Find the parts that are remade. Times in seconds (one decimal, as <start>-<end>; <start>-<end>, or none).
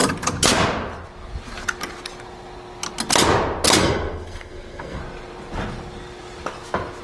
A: 3.8-5.0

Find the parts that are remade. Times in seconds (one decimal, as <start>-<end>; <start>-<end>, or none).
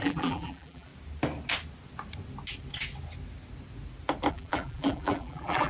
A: 0.0-0.9; 4.3-5.7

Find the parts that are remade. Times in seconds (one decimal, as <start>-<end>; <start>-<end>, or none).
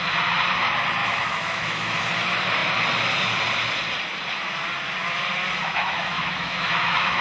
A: 1.0-2.0; 5.6-7.2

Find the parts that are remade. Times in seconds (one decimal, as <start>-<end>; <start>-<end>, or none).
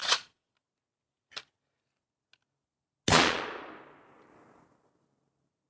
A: 0.0-0.5; 3.1-3.7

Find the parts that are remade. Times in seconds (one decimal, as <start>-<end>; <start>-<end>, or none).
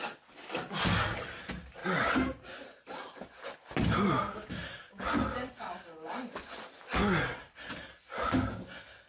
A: none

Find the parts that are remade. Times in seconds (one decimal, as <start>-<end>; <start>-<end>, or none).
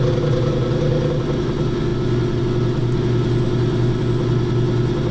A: none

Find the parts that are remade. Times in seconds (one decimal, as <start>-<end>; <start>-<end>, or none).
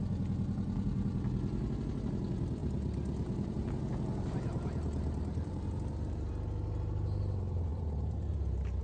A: 2.6-6.3; 7.7-8.8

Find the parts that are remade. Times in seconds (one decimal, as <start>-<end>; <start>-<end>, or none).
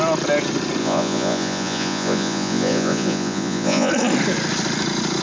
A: 0.8-3.9